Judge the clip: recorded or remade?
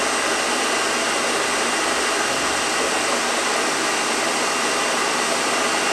recorded